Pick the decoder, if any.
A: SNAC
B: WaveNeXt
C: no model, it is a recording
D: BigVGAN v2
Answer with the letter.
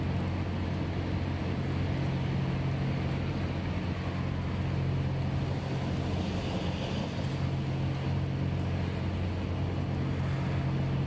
C